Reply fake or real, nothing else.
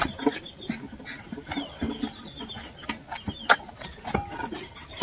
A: real